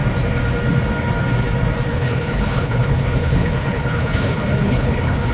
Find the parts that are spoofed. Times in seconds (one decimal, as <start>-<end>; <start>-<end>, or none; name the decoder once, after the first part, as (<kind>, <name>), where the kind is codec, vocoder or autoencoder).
1.9-5.3 (codec, HILCodec)